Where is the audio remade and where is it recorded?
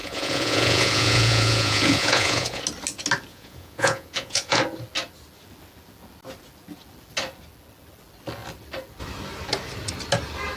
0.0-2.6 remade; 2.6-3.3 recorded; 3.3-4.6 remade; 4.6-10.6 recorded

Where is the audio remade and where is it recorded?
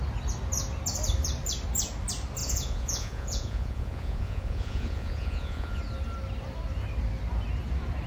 0.0-2.4 recorded; 2.4-5.8 remade; 5.8-8.1 recorded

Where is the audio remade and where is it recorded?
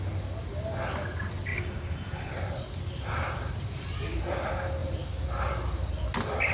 0.0-1.5 recorded; 1.5-2.3 remade; 2.3-6.5 recorded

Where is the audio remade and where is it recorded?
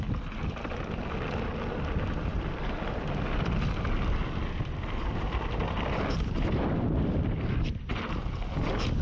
0.0-2.3 recorded; 2.3-7.3 remade; 7.3-9.0 recorded